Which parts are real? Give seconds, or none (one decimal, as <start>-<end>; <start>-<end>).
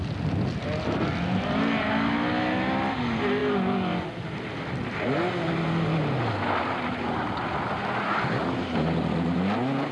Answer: 0.0-9.9